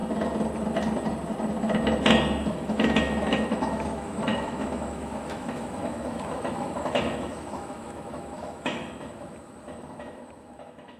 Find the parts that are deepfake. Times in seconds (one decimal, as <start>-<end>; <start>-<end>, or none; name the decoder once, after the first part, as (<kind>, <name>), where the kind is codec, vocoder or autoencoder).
2.5-11.0 (autoencoder, DAC-VAE)